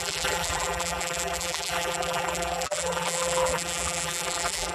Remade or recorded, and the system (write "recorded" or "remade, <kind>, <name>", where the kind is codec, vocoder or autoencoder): remade, vocoder, BigVGAN v2